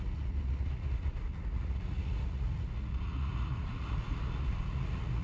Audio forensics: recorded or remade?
remade